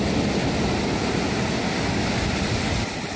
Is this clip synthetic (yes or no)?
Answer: no